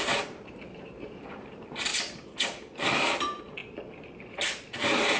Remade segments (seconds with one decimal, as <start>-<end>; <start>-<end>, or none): 0.0-1.9; 3.1-3.6; 4.3-5.2